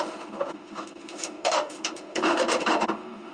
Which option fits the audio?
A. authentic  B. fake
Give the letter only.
B